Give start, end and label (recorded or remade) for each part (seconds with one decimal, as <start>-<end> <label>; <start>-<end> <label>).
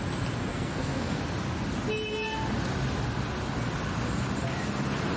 0.0-0.5 recorded; 0.5-1.2 remade; 1.2-5.2 recorded